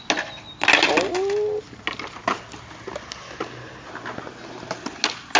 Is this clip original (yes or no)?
yes